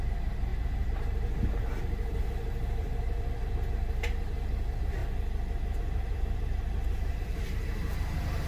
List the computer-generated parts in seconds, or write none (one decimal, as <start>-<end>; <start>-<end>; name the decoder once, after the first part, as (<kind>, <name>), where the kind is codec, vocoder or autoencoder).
0.0-5.0 (vocoder, BigVGAN v2); 5.8-8.5